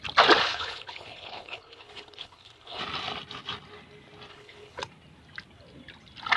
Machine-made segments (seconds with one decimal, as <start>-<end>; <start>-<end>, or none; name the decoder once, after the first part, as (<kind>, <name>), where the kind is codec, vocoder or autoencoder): 0.4-2.8 (codec, HILCodec); 4.3-4.8